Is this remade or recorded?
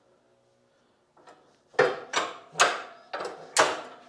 recorded